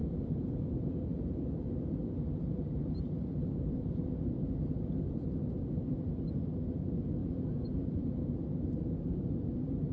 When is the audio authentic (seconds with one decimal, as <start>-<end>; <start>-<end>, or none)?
0.7-7.2; 8.3-9.9